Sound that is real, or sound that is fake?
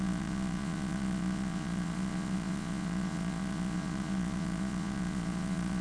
fake